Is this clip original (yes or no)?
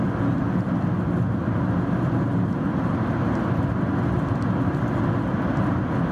yes